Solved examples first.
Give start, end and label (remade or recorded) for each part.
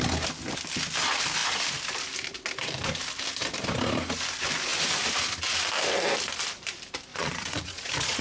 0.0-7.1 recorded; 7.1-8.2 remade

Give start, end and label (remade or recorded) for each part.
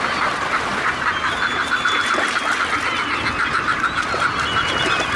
0.0-5.2 recorded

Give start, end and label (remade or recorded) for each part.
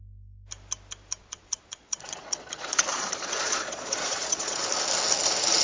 0.0-1.2 recorded; 1.2-4.6 remade; 4.6-5.6 recorded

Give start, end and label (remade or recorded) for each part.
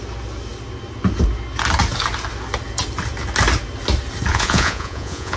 0.0-4.3 recorded; 4.3-5.4 remade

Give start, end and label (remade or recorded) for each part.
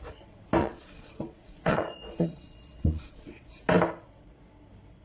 0.0-0.6 recorded; 0.6-3.6 remade; 3.6-5.0 recorded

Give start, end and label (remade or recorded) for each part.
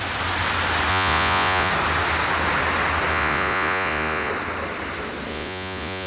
0.0-0.9 recorded; 0.9-1.7 remade; 1.7-3.1 recorded; 3.1-4.3 remade; 4.3-5.3 recorded; 5.3-6.1 remade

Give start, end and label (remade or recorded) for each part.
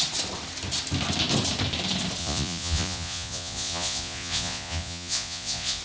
0.0-2.2 recorded; 2.2-5.8 remade